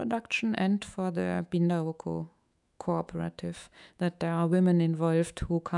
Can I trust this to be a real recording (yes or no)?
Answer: no